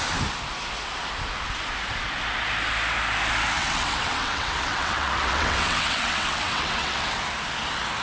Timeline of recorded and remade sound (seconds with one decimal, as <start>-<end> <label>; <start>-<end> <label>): 0.0-3.6 recorded; 3.6-7.2 remade; 7.2-8.0 recorded